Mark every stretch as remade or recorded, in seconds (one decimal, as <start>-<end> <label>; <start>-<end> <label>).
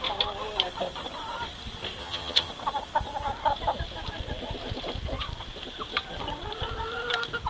0.0-2.0 recorded; 2.0-2.5 remade; 2.5-7.5 recorded